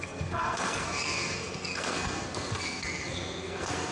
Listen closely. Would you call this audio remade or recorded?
remade